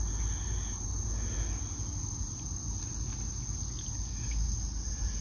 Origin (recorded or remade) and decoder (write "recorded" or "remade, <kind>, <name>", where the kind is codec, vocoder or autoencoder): recorded